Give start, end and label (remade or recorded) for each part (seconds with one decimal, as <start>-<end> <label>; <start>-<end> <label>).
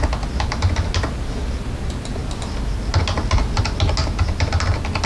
0.0-5.1 recorded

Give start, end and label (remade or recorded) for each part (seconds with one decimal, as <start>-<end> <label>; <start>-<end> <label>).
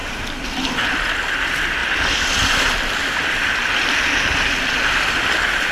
0.0-5.7 recorded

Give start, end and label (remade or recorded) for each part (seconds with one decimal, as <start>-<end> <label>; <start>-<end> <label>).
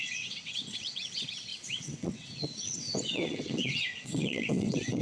0.0-5.0 remade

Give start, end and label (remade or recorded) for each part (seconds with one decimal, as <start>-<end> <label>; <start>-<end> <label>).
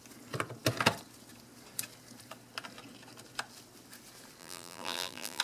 0.0-4.4 recorded; 4.4-5.4 remade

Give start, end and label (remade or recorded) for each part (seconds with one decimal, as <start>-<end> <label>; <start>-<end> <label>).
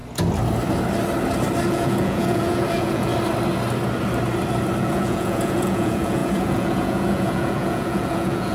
0.0-1.7 recorded; 1.7-3.1 remade; 3.1-4.8 recorded; 4.8-8.5 remade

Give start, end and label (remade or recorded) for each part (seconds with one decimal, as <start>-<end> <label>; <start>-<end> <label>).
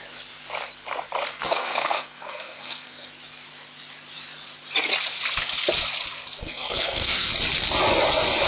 0.0-1.3 recorded; 1.3-3.1 remade; 3.1-6.4 recorded; 6.4-7.3 remade; 7.3-8.5 recorded